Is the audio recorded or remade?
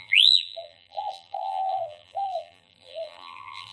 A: remade